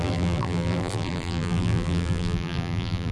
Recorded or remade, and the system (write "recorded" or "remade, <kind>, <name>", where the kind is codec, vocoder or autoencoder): remade, vocoder, BigVGAN v2